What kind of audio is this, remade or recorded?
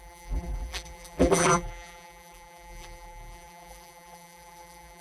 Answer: remade